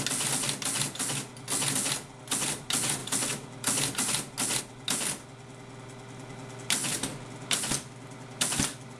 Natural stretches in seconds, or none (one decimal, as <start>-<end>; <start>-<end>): 0.0-9.0